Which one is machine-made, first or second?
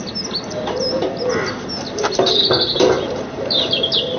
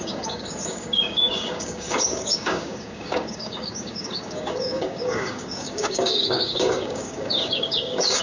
second